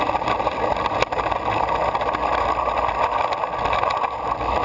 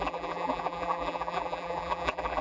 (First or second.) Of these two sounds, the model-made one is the second